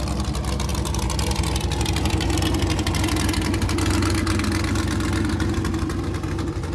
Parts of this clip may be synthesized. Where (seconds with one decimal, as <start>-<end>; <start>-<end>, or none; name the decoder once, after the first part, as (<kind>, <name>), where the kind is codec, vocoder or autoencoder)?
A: none